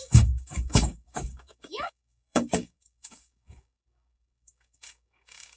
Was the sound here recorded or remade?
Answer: remade